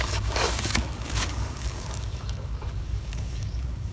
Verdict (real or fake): fake